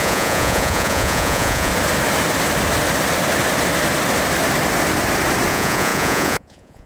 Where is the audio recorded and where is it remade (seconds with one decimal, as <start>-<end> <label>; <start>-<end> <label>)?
0.0-1.7 remade; 1.7-5.5 recorded; 5.5-6.9 remade

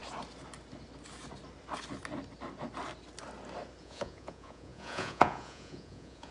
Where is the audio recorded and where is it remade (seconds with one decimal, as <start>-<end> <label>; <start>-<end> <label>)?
0.0-3.8 recorded; 3.8-6.3 remade

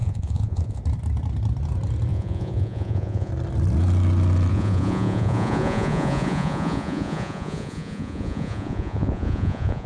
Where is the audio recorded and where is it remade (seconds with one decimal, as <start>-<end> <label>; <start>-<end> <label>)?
0.0-0.8 remade; 0.8-2.1 recorded; 2.1-3.3 remade; 3.3-4.5 recorded; 4.5-9.9 remade

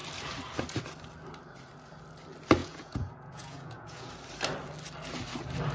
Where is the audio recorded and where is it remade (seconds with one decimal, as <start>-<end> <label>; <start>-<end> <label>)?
0.0-2.6 recorded; 2.6-4.1 remade; 4.1-5.7 recorded